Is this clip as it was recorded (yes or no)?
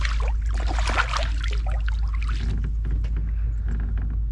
yes